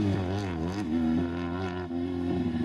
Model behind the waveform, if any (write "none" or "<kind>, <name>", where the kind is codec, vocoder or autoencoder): none